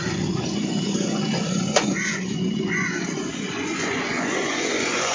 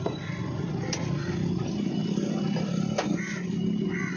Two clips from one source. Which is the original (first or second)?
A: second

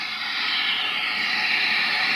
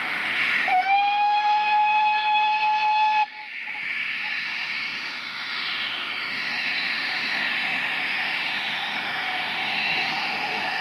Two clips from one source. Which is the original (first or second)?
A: first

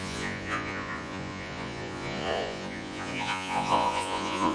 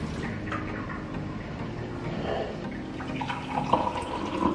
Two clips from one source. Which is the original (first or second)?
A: second